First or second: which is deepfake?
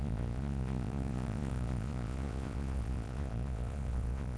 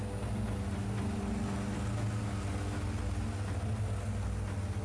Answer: first